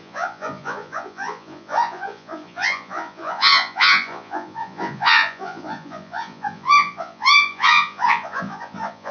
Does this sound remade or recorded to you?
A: remade